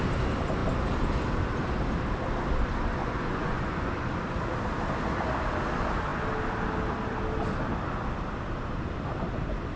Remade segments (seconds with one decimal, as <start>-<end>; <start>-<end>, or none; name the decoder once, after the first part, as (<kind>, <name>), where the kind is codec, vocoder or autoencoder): 3.0-3.9 (vocoder, Vocos)